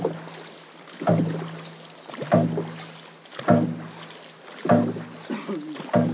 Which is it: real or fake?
real